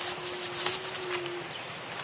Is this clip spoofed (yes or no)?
no